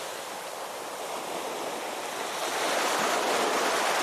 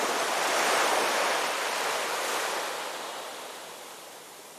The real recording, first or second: first